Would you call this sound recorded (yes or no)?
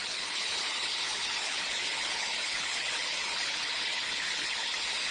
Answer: no